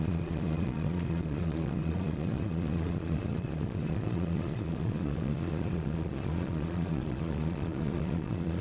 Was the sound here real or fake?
fake